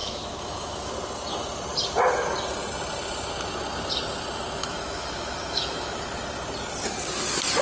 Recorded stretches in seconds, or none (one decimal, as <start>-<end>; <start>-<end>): 0.9-4.6; 6.0-7.6